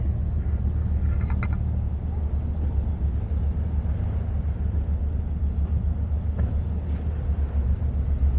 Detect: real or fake real